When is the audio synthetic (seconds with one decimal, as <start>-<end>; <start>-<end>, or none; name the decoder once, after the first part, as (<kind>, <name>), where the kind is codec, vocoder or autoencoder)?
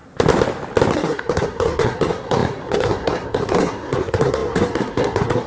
0.9-5.5 (codec, SNAC)